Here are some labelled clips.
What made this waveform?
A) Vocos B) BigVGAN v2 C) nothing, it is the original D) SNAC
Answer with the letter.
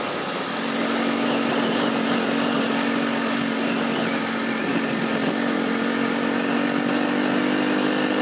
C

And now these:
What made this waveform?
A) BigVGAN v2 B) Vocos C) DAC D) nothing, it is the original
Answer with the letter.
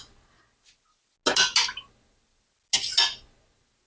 D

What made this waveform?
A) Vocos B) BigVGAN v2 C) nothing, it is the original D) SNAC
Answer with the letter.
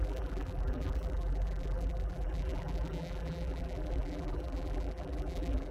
B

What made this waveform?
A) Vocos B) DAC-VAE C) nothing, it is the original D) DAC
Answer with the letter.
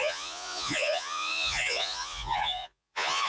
A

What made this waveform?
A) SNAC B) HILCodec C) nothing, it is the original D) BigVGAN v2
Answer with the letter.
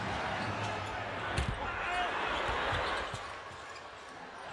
C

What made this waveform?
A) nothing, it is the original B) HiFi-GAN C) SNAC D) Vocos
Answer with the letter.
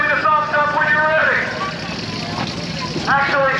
A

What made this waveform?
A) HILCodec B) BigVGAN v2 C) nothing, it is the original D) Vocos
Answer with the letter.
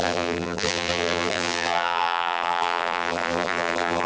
B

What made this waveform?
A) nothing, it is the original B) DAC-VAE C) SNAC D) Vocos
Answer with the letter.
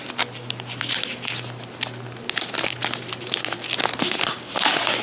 A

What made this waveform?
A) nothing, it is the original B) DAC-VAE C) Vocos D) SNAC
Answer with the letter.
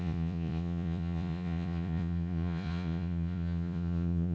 C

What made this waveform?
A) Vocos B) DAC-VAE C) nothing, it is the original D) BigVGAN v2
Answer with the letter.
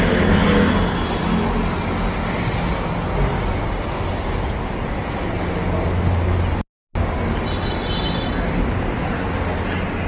C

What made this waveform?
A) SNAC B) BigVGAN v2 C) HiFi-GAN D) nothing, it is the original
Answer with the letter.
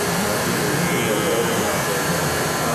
D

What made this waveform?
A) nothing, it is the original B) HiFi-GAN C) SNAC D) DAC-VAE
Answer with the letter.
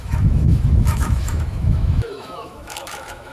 D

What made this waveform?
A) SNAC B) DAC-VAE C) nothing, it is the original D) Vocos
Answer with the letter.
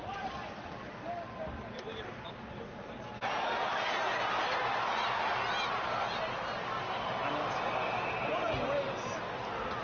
C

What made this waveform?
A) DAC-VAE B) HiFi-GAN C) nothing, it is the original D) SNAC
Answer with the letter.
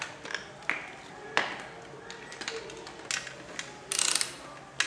C